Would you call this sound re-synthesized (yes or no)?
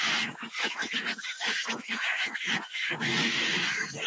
yes